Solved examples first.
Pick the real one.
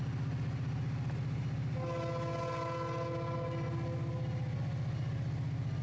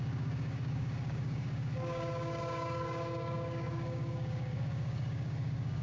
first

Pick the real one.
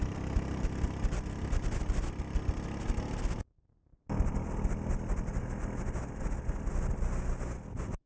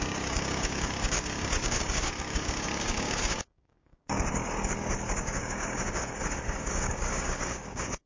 first